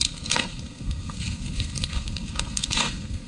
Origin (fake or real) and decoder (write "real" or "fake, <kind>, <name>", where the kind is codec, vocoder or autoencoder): fake, codec, SNAC